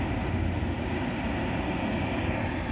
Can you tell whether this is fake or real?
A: real